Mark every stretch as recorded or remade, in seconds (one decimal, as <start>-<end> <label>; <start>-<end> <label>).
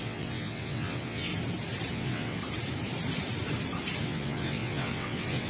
0.0-1.3 remade; 1.3-1.9 recorded; 1.9-2.4 remade; 2.4-4.0 recorded; 4.0-5.5 remade